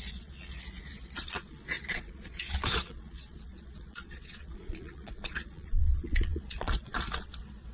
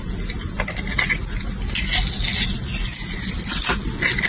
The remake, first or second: first